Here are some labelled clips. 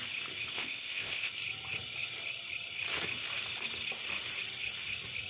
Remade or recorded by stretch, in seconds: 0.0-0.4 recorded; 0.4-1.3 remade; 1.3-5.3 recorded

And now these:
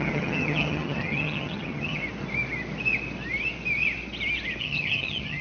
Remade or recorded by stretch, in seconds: 0.0-2.0 remade; 2.0-4.6 recorded; 4.6-5.4 remade

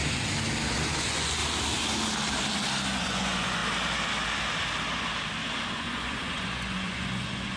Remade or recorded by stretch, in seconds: 0.0-1.0 recorded; 1.0-1.4 remade; 1.4-3.0 recorded; 3.0-3.6 remade; 3.6-5.7 recorded; 5.7-7.6 remade

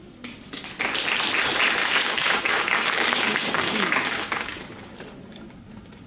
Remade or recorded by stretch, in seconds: 0.0-1.8 recorded; 1.8-4.6 remade; 4.6-6.1 recorded

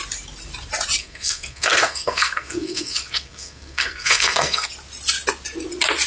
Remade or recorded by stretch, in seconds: 0.0-1.0 recorded; 1.0-4.7 remade; 4.7-6.1 recorded

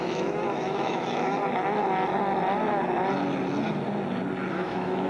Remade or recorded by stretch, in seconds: 0.0-1.4 remade; 1.4-4.5 recorded; 4.5-5.1 remade

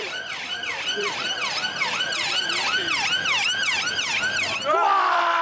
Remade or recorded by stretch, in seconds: 0.0-1.4 remade; 1.4-2.0 recorded; 2.0-2.8 remade; 2.8-3.9 recorded; 3.9-5.4 remade

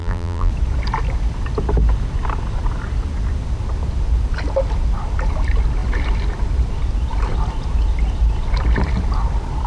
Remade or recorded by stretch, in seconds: 0.0-0.5 remade; 0.5-9.7 recorded